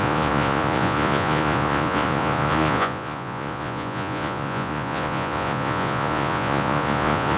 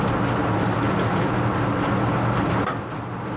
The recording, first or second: second